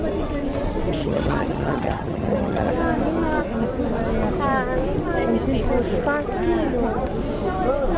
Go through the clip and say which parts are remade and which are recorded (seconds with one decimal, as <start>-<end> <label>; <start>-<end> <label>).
0.0-1.0 recorded; 1.0-2.7 remade; 2.7-8.0 recorded